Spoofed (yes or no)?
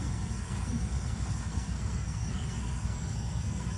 yes